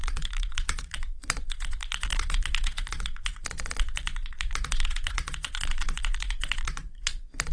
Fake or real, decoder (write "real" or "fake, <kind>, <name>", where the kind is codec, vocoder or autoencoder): fake, vocoder, Vocos